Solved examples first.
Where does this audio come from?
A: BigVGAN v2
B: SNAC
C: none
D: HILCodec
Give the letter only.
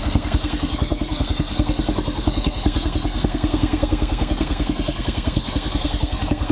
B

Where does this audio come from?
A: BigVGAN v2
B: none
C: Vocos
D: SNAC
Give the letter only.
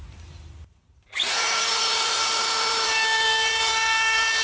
A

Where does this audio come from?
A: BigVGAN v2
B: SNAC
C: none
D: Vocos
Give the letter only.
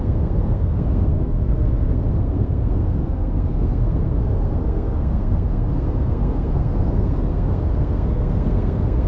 B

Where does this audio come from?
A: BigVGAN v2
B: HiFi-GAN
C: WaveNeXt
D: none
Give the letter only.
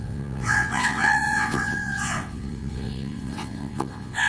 C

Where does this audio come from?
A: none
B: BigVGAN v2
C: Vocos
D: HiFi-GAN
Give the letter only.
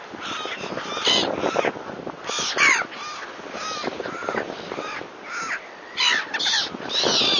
A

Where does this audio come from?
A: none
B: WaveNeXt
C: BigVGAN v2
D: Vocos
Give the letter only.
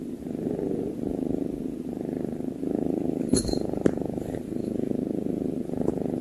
C